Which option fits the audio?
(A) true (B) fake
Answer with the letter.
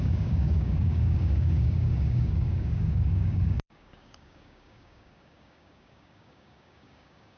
B